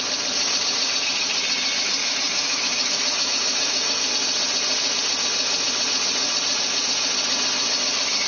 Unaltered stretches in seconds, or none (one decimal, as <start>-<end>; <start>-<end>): 0.0-2.0; 4.1-8.3